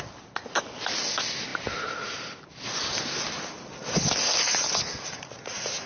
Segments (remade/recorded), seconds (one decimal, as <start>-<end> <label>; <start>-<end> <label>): 0.0-5.9 recorded